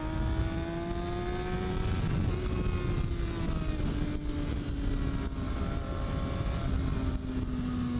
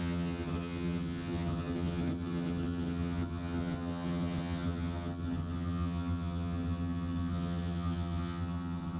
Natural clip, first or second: first